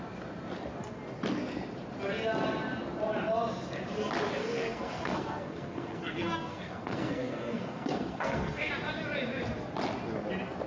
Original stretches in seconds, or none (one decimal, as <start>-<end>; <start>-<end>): 0.0-4.4; 8.7-10.7